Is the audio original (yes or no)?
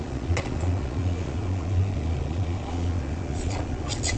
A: no